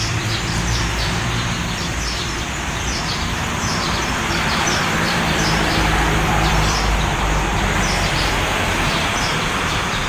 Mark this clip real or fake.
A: fake